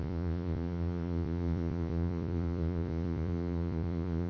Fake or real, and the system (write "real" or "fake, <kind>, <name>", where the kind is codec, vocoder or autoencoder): fake, vocoder, Vocos